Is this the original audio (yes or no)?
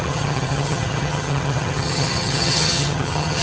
no